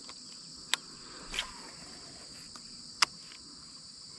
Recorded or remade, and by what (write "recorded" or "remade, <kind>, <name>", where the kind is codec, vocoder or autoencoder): recorded